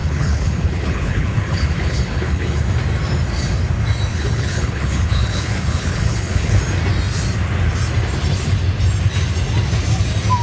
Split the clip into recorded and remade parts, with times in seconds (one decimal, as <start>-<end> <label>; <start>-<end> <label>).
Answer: 0.0-2.6 remade; 2.6-4.1 recorded; 4.1-6.6 remade; 6.6-10.4 recorded